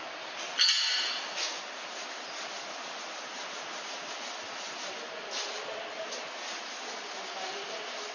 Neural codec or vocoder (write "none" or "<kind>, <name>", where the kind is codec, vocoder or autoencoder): none